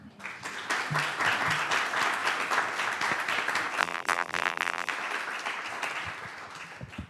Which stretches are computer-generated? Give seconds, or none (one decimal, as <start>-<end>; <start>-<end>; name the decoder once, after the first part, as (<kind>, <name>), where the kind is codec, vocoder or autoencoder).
3.8-4.9 (vocoder, BigVGAN v2)